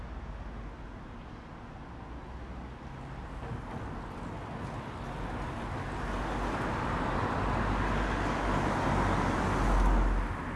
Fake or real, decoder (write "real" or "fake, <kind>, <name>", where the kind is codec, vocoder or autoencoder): real